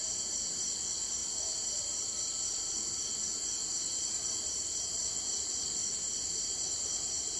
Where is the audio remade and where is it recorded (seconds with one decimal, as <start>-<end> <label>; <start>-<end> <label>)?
0.0-1.2 remade; 1.2-4.0 recorded; 4.0-5.8 remade; 5.8-6.4 recorded; 6.4-7.4 remade